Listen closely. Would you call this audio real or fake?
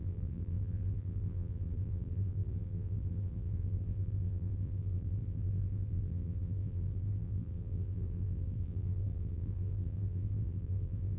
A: fake